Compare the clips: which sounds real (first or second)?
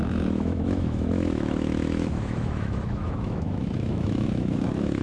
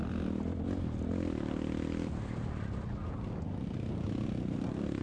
second